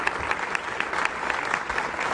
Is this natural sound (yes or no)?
yes